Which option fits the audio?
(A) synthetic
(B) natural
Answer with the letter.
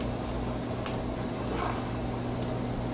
B